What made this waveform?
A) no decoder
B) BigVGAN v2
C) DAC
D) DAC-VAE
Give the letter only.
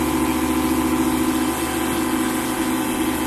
A